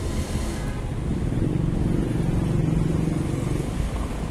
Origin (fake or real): real